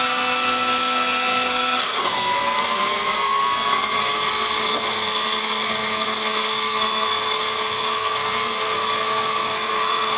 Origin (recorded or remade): remade